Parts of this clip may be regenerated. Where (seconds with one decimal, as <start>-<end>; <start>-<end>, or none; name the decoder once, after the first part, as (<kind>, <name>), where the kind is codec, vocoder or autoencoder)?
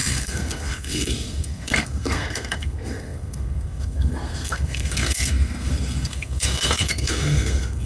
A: 0.0-7.9 (codec, SNAC)